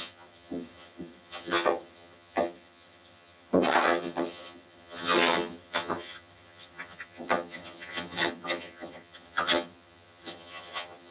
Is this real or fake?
fake